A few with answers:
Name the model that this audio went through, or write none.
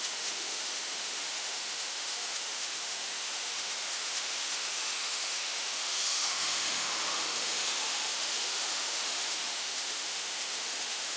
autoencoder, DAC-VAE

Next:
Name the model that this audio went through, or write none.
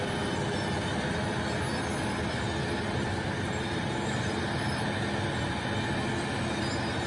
none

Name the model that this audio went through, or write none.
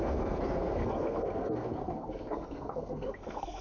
codec, SNAC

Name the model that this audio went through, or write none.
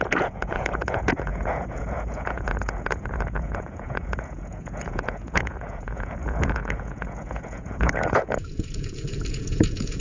vocoder, Vocos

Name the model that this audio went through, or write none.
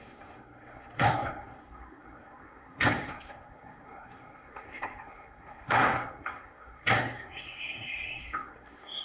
codec, SNAC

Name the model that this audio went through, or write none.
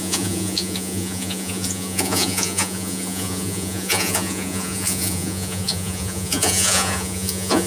vocoder, Vocos